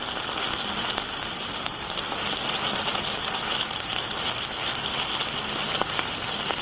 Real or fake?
real